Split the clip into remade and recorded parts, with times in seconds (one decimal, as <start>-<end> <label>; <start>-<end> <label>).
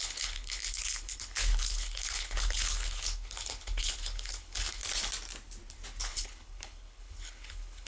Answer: 0.0-4.8 remade; 4.8-6.0 recorded; 6.0-7.9 remade